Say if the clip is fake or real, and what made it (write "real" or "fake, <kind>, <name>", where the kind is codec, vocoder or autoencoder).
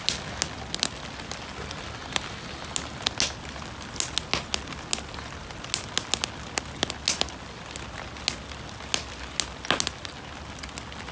real